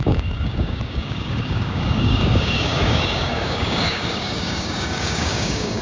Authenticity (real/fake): fake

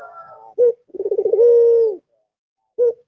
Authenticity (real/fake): fake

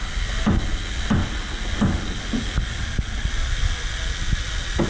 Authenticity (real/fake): real